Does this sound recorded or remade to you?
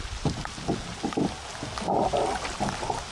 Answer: recorded